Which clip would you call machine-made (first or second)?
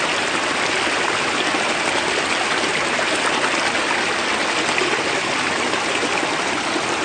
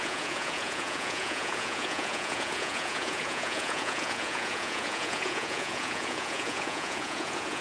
second